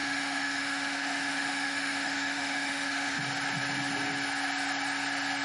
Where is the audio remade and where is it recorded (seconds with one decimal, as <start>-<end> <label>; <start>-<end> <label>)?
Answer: 0.0-3.2 remade; 3.2-5.4 recorded